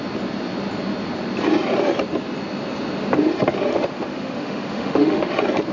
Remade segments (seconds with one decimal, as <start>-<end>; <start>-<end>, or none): 3.7-5.3